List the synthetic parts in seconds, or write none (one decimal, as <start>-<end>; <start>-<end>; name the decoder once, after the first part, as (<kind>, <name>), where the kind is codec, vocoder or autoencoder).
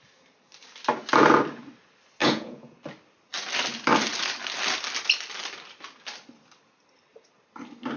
2.2-2.8 (vocoder, Vocos)